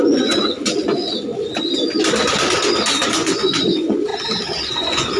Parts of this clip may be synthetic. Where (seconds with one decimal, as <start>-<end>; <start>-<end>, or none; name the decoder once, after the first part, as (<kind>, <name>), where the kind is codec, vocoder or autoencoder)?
0.0-1.3 (vocoder, Vocos); 3.1-4.1; 4.7-5.2